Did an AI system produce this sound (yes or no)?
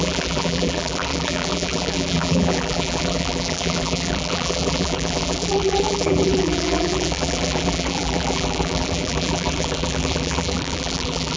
yes